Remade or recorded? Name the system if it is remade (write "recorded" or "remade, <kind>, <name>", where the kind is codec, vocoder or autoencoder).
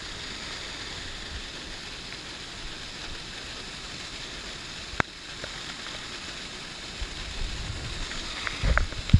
recorded